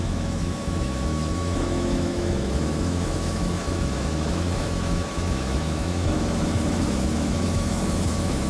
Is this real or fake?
fake